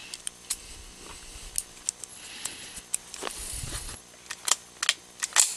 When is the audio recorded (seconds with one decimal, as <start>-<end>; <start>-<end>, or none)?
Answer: 0.0-2.1; 2.8-3.3; 4.0-5.6